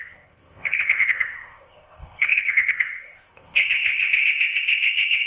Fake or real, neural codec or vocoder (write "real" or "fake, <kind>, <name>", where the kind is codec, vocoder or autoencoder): fake, codec, ZipCodec